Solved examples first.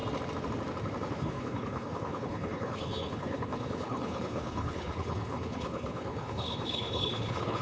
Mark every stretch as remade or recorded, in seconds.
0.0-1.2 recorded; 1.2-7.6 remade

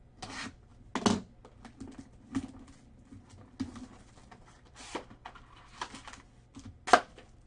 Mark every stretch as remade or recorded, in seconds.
0.0-7.5 recorded

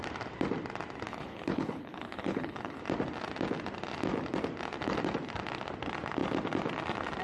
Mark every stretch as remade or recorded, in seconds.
0.0-1.1 recorded; 1.1-2.8 remade; 2.8-7.2 recorded

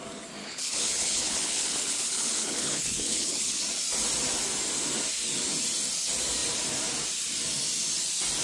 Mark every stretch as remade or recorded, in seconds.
0.0-0.4 recorded; 0.4-3.6 remade; 3.6-8.4 recorded

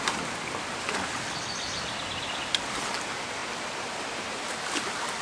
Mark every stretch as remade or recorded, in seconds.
0.0-5.2 recorded

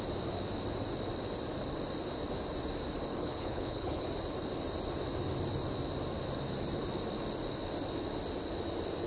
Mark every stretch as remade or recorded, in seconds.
0.0-3.1 recorded; 3.1-4.1 remade; 4.1-9.1 recorded